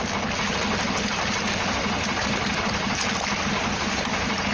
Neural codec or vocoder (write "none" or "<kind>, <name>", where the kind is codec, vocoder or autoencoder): none